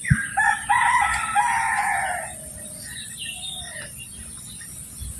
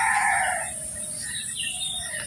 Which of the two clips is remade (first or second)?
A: second